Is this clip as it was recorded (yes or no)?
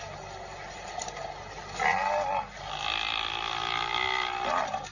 yes